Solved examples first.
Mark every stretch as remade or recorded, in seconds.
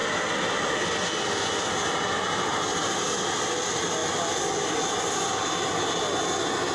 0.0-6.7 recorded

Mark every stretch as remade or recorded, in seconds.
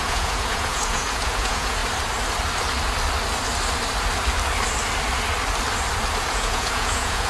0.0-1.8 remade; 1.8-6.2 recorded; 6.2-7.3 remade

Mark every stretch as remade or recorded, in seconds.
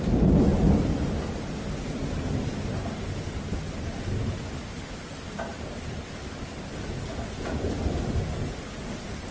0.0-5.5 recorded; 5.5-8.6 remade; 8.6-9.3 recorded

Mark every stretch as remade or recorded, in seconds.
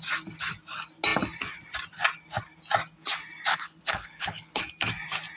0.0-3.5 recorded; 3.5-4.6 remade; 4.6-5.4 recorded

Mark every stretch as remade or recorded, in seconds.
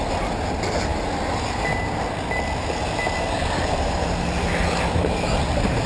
0.0-5.9 recorded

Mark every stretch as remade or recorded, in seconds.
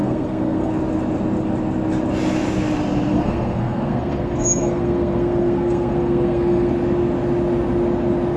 0.0-0.7 remade; 0.7-3.1 recorded; 3.1-6.7 remade; 6.7-8.4 recorded